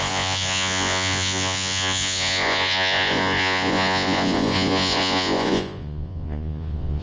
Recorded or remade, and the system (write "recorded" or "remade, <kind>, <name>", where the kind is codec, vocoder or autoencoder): remade, vocoder, Vocos